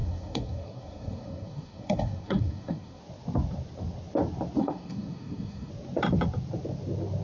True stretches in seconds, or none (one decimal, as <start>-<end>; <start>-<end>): 3.0-4.6; 5.7-7.2